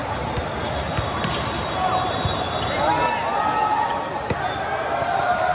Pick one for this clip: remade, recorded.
recorded